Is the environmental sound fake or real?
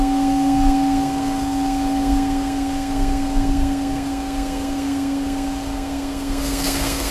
fake